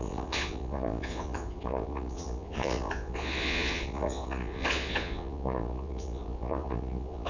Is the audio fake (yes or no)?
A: yes